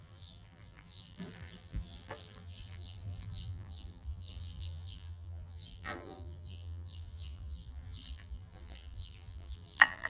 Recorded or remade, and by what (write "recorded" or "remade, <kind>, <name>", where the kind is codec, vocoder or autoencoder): remade, vocoder, BigVGAN v2